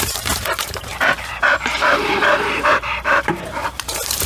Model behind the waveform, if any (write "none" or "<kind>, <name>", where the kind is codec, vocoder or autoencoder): vocoder, BigVGAN v2